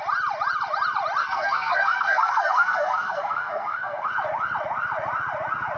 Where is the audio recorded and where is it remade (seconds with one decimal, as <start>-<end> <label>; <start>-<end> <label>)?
0.0-1.2 recorded; 1.2-4.1 remade; 4.1-5.8 recorded